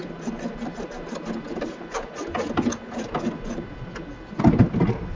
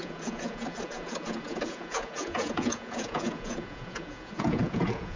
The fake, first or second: second